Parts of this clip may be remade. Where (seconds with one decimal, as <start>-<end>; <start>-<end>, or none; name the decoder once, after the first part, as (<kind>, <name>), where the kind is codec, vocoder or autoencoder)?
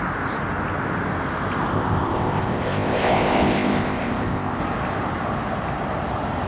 1.7-4.6 (codec, ZipCodec)